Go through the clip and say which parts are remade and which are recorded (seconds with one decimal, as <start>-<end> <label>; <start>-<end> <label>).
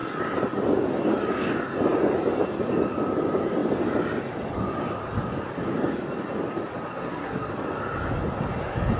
0.0-6.9 recorded; 6.9-7.5 remade; 7.5-9.0 recorded